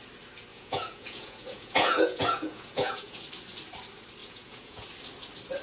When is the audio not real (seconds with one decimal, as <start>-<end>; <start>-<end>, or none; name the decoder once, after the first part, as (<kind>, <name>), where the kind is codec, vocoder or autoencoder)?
0.5-3.2 (vocoder, Vocos); 4.2-4.9